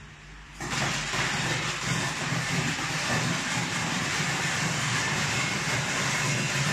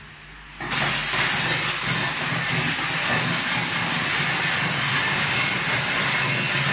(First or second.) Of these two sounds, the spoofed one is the first